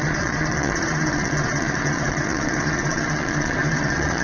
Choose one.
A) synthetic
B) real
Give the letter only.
A